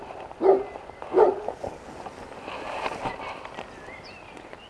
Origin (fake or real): real